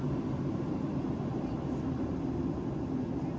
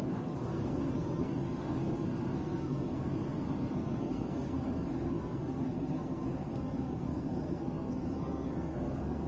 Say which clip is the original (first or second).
first